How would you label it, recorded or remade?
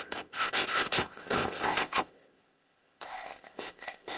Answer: remade